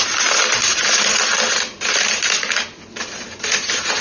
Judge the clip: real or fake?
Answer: real